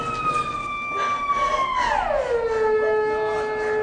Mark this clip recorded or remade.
recorded